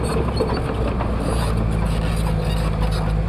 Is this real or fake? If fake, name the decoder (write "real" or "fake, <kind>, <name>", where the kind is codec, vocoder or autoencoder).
real